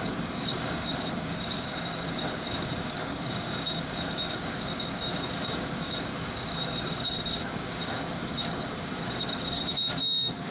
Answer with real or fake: fake